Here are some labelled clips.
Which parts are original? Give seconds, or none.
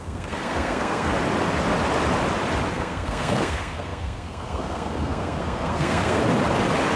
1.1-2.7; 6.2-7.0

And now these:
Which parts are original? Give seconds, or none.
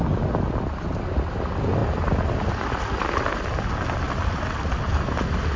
0.0-5.6